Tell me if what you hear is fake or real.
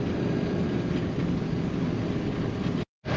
real